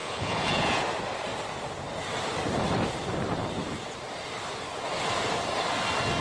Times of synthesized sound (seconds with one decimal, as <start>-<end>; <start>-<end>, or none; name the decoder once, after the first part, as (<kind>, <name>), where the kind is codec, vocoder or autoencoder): 0.0-0.8 (vocoder, Vocos)